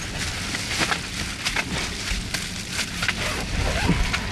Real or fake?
real